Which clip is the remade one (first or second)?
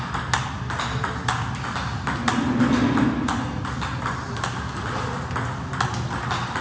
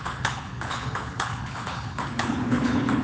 second